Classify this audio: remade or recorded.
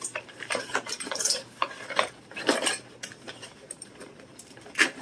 remade